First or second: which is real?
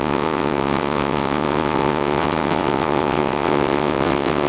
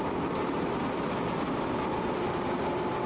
second